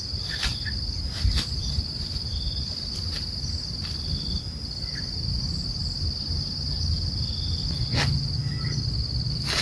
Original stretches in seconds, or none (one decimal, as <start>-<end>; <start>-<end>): 0.0-9.6